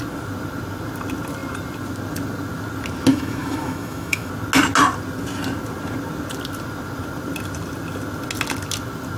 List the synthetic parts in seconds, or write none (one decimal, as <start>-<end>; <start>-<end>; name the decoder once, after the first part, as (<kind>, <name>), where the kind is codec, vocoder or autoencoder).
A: 3.1-4.3 (autoencoder, DAC-VAE)